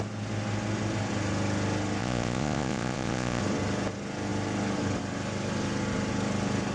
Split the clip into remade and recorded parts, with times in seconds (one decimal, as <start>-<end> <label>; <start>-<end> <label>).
0.0-2.0 recorded; 2.0-3.4 remade; 3.4-6.7 recorded